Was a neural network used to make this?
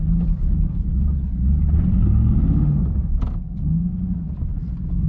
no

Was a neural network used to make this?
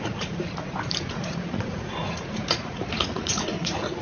yes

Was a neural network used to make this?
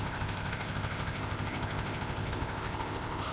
yes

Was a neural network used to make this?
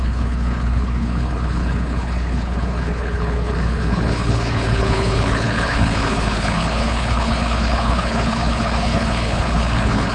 yes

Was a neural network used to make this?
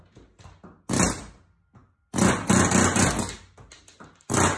no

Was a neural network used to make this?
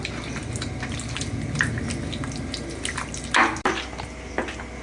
no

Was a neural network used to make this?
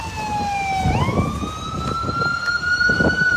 no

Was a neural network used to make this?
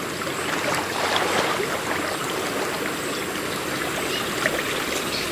no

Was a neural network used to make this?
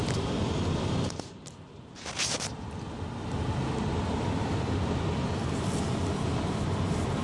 no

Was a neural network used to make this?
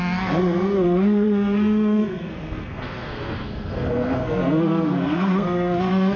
yes